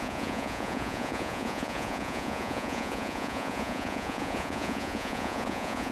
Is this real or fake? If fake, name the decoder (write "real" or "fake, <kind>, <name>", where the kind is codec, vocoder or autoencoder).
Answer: fake, vocoder, Vocos